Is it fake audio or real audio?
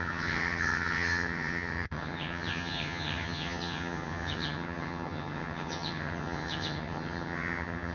fake